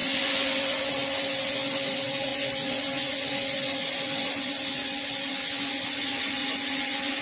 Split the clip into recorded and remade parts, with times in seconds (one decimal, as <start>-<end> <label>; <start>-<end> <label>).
0.0-7.2 remade